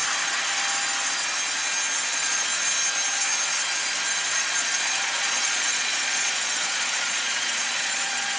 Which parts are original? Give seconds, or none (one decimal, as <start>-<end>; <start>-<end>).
0.0-2.1; 2.5-4.3

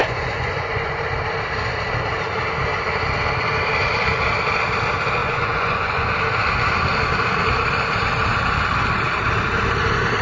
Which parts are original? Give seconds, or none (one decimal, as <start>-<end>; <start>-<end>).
1.0-5.2; 6.1-10.2

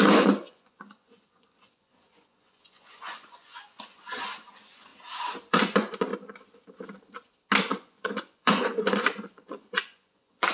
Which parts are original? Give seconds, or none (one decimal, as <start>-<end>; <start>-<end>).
4.9-5.5; 6.1-7.6

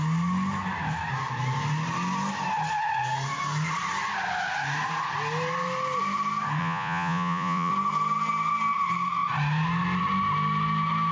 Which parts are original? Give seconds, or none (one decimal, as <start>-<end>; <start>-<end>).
0.0-6.6; 7.7-11.1

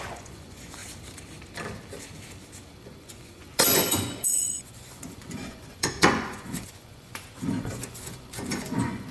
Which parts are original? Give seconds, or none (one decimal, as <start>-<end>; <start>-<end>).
0.8-2.8

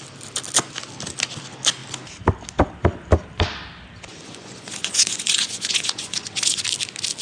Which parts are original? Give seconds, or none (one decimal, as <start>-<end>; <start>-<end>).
0.0-4.1; 6.6-7.2